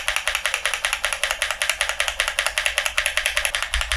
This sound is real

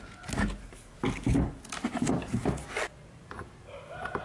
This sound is real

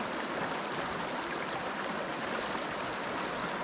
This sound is real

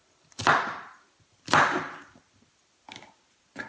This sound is real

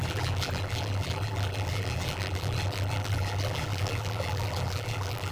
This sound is fake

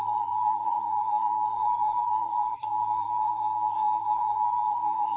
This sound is fake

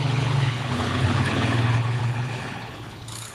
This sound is fake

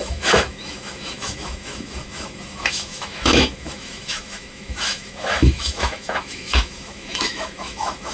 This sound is fake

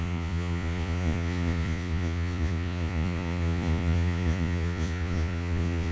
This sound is fake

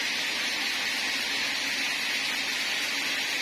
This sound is real